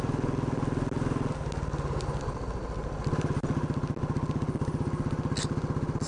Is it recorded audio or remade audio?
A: recorded